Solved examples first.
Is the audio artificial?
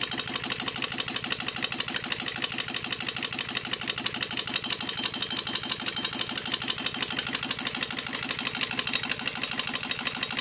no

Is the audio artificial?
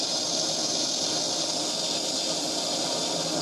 no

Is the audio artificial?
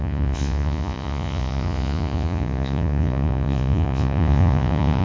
yes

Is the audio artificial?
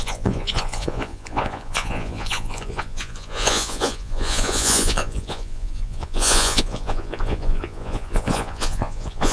yes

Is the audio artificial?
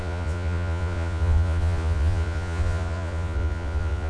yes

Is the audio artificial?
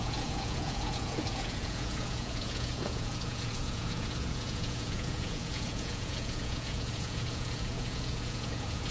yes